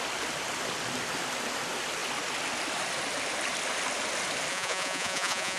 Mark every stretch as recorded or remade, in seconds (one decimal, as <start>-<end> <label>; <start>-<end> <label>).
0.0-4.5 recorded; 4.5-5.6 remade